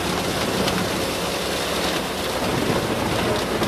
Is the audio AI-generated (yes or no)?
no